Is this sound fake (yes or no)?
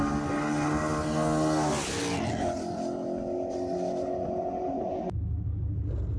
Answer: no